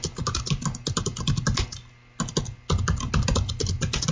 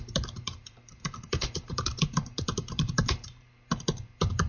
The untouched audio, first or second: first